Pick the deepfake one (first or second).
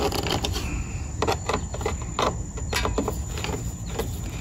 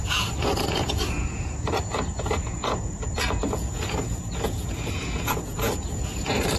second